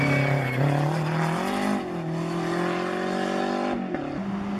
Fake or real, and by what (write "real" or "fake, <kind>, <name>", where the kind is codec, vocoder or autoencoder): real